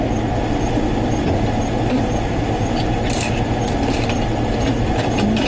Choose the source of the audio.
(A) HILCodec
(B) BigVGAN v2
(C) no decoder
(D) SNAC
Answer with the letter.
C